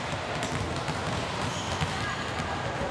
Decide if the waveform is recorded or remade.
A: recorded